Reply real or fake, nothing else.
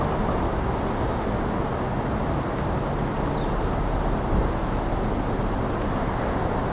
real